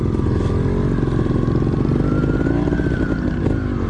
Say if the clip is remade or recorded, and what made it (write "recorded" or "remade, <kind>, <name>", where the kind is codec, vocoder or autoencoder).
recorded